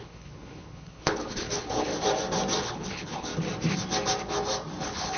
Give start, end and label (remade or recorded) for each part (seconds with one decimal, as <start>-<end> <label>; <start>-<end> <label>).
0.0-1.9 remade; 1.9-2.6 recorded; 2.6-3.3 remade; 3.3-4.8 recorded; 4.8-5.2 remade